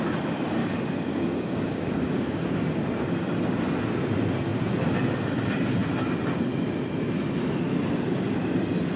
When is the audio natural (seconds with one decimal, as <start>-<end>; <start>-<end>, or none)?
0.0-0.6; 2.8-9.0